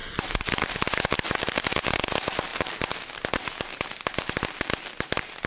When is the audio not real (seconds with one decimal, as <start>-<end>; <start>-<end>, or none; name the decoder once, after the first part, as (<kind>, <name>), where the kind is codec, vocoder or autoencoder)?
0.0-0.8 (vocoder, BigVGAN v2)